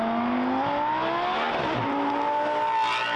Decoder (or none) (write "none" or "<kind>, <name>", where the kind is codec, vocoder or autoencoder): none